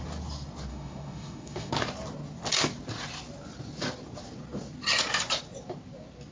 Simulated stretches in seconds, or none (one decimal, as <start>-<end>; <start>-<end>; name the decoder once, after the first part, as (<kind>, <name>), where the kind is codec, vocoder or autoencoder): 0.7-1.7 (autoencoder, DAC-VAE)